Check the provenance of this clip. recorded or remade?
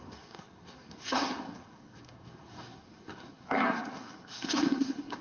remade